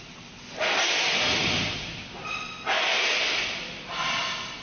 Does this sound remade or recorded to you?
recorded